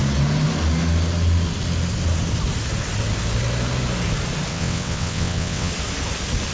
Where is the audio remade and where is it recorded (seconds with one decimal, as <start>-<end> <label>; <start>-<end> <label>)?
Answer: 0.0-4.5 recorded; 4.5-5.7 remade; 5.7-6.5 recorded